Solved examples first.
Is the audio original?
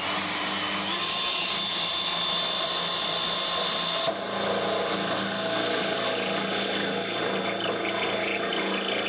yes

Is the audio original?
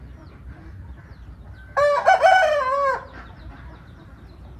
no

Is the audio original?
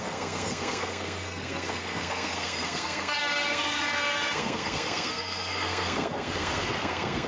no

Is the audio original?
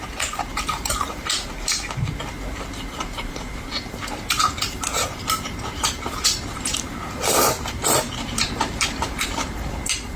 no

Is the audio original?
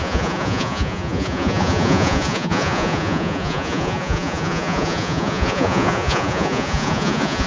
no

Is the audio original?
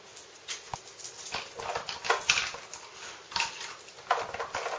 yes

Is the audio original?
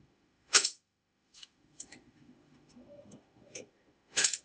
no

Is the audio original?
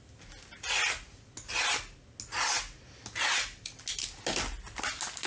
yes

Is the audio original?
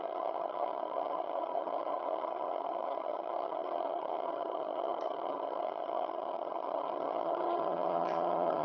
no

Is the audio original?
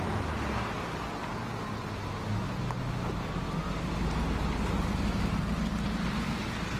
yes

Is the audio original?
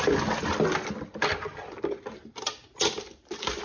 yes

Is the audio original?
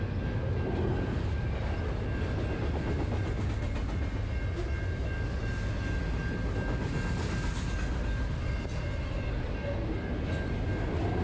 yes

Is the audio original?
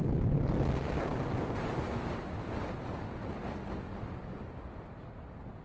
yes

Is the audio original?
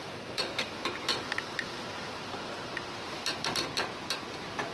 yes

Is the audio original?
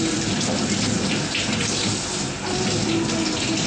yes